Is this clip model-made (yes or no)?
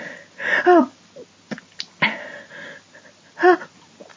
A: no